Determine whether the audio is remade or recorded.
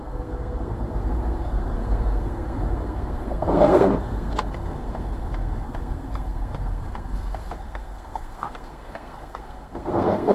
remade